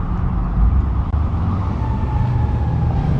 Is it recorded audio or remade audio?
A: recorded